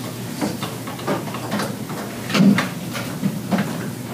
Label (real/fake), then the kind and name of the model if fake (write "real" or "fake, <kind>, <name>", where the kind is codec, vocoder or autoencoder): real